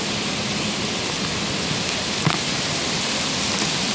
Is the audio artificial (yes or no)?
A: no